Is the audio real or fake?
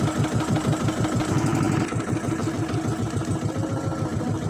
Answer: real